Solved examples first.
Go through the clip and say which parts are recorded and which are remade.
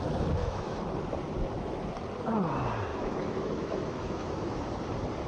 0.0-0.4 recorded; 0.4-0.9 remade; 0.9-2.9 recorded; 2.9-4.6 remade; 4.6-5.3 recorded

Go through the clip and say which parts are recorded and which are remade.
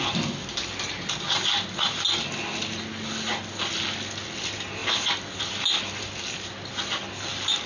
0.0-7.7 recorded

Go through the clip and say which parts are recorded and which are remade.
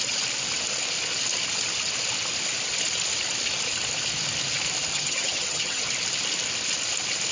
0.0-4.9 recorded; 4.9-5.8 remade; 5.8-7.3 recorded